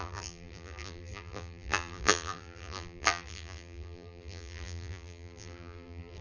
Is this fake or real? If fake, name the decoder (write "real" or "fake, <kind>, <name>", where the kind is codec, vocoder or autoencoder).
fake, vocoder, BigVGAN v2